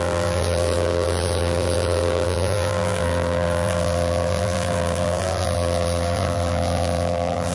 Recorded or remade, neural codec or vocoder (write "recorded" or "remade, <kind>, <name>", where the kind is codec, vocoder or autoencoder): remade, vocoder, BigVGAN v2